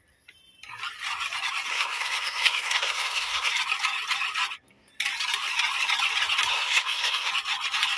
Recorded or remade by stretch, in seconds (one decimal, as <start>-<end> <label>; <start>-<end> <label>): 0.0-1.7 recorded; 1.7-3.5 remade; 3.5-6.5 recorded; 6.5-7.3 remade; 7.3-8.0 recorded